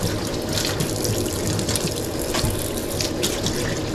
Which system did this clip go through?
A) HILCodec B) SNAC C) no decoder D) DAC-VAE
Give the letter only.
C